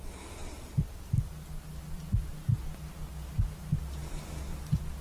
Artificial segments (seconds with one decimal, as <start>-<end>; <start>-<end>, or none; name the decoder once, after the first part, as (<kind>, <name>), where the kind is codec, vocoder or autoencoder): none